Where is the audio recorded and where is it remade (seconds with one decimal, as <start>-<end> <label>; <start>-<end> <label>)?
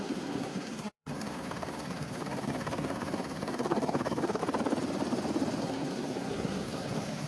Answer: 0.0-4.4 remade; 4.4-5.6 recorded; 5.6-7.3 remade